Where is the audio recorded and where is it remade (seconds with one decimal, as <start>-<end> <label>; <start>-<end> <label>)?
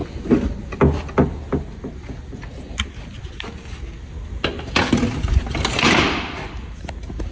0.0-7.3 recorded